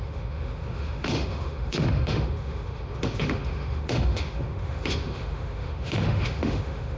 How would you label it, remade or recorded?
remade